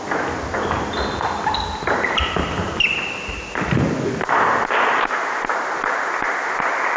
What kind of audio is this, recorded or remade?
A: recorded